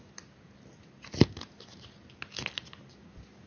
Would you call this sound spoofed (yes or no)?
no